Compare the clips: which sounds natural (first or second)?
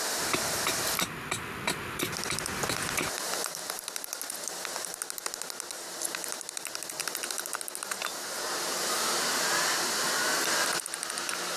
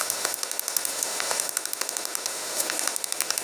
first